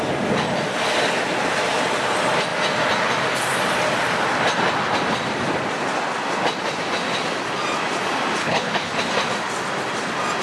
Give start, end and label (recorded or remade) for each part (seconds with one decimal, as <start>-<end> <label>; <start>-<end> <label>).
0.0-8.4 recorded; 8.4-8.9 remade; 8.9-10.4 recorded